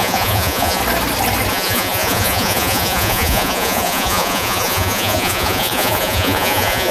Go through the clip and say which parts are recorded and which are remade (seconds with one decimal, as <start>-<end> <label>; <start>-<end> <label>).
0.0-0.8 remade; 0.8-1.5 recorded; 1.5-6.9 remade